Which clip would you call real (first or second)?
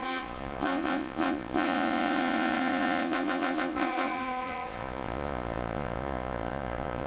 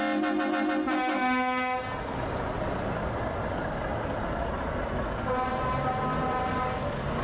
second